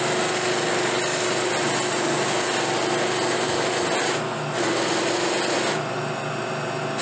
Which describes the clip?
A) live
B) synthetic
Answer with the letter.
A